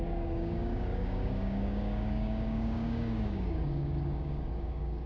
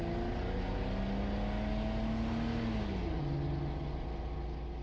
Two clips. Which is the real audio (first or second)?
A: second